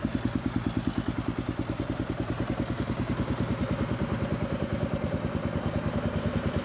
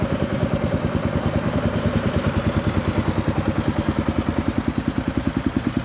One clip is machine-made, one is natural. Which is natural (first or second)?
first